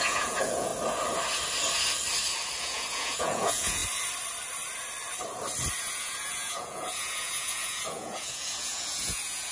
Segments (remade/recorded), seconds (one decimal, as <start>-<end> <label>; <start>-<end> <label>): 0.0-0.7 remade; 0.7-2.6 recorded; 2.6-3.8 remade; 3.8-5.8 recorded; 5.8-9.5 remade